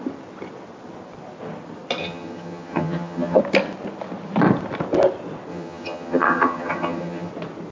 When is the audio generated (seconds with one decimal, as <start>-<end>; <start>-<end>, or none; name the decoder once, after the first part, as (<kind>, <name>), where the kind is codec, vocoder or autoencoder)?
2.0-3.4 (vocoder, HiFi-GAN); 5.5-7.3